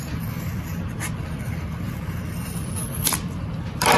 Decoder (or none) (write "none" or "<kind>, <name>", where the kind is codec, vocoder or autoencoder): vocoder, BigVGAN v2